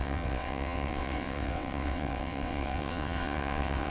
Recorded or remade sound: remade